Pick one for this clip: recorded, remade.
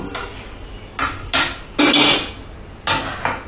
recorded